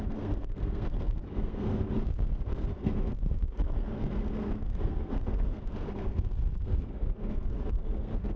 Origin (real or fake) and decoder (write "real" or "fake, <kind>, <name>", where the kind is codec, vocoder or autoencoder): fake, codec, SNAC